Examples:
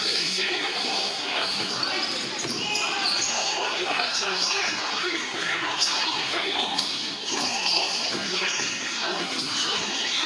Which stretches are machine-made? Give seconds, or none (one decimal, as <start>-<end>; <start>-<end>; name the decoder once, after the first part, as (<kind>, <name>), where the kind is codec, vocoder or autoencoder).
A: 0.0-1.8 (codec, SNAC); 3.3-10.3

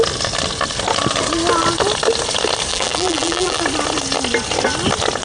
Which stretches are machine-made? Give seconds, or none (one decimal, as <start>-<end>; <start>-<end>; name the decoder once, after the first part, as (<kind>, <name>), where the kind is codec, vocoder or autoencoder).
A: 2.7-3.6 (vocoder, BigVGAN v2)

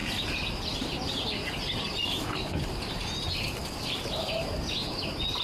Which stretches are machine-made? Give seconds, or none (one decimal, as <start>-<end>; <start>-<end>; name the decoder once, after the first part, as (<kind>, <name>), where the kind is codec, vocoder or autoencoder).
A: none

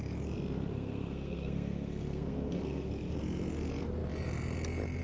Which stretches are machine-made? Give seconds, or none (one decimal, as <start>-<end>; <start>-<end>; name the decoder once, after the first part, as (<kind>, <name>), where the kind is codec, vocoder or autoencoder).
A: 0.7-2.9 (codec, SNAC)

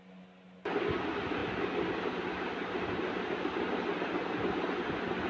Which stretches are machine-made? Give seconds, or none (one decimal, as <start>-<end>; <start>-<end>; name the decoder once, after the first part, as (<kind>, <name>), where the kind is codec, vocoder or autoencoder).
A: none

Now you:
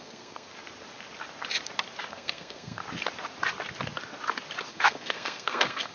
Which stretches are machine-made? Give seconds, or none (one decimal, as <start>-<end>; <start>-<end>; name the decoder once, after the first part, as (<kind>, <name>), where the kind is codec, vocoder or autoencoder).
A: 0.0-0.5 (codec, SNAC); 2.1-2.8; 4.7-5.9

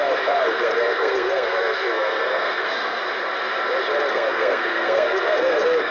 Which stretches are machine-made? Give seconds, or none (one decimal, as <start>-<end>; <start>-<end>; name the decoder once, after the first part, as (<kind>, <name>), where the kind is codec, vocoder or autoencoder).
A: 0.0-3.0 (codec, SNAC); 4.1-5.9